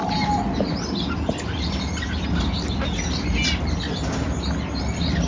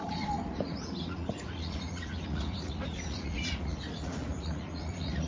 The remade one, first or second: second